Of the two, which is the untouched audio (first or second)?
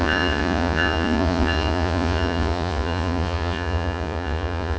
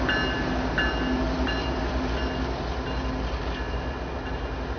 second